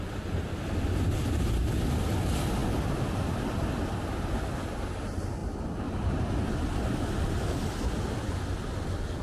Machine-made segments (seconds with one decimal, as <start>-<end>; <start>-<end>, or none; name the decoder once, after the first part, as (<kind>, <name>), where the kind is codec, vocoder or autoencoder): none